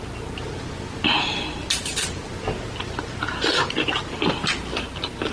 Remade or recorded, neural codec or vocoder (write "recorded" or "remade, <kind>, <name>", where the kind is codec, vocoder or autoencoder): recorded